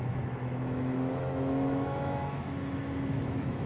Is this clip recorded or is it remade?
remade